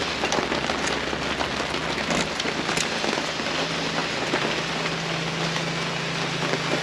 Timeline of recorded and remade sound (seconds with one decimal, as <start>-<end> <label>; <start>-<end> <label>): 0.0-4.0 recorded; 4.0-4.5 remade; 4.5-6.8 recorded